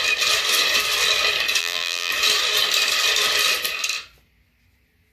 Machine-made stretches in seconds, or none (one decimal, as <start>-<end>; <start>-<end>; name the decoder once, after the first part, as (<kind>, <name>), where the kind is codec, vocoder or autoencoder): 1.6-2.1 (vocoder, BigVGAN v2)

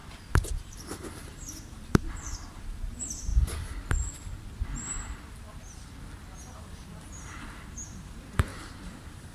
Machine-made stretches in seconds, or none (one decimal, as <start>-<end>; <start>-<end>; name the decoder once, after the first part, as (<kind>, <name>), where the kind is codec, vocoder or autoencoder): 0.0-3.3 (vocoder, BigVGAN v2); 6.6-9.3

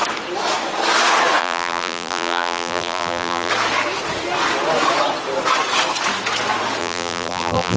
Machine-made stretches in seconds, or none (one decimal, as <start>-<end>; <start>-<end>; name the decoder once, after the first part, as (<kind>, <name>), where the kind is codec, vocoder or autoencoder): 1.4-3.5 (vocoder, BigVGAN v2); 6.8-7.8

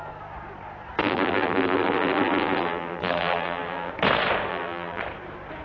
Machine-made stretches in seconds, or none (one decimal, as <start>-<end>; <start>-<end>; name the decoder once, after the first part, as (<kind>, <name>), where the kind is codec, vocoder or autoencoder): 1.0-3.9 (vocoder, BigVGAN v2); 4.5-5.0

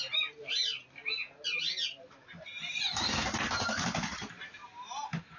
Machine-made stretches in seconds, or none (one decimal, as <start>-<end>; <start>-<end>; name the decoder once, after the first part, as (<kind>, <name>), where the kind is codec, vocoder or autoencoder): 0.0-0.7 (vocoder, BigVGAN v2); 2.1-4.6

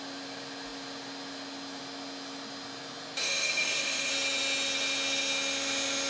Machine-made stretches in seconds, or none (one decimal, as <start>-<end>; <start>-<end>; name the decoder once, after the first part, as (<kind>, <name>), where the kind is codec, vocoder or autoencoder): 3.2-4.1 (autoencoder, DAC-VAE)

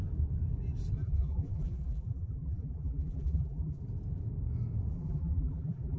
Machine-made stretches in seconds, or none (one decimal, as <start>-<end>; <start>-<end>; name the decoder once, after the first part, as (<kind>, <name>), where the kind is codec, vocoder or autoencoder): 1.0-3.8 (vocoder, BigVGAN v2); 4.9-6.0

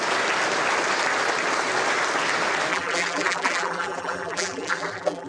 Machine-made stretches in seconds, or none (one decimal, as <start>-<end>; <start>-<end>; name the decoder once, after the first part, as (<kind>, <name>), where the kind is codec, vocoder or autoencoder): 2.7-5.3 (vocoder, BigVGAN v2)